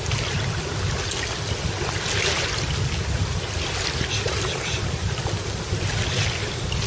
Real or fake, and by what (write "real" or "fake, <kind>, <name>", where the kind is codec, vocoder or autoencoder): real